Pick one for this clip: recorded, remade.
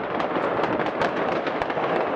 recorded